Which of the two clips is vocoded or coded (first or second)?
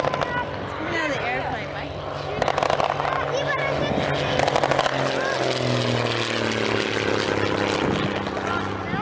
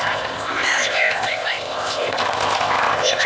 second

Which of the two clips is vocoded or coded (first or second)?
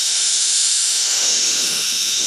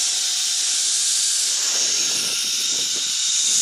first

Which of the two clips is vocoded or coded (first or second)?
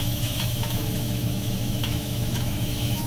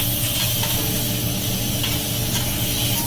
first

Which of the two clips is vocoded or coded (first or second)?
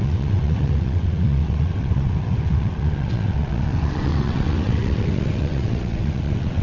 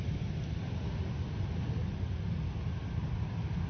first